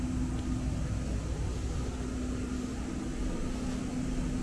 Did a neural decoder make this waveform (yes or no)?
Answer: no